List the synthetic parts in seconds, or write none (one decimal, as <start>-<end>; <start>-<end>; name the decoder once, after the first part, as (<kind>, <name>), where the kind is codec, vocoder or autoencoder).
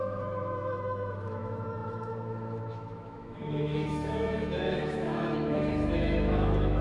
0.0-6.8 (autoencoder, DAC-VAE)